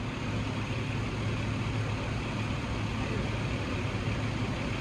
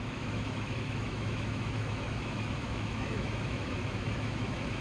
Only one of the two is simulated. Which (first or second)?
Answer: second